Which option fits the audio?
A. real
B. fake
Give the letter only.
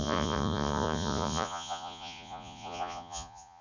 B